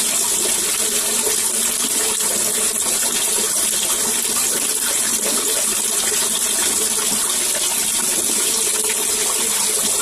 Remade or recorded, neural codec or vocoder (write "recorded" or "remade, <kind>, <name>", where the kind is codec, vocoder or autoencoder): recorded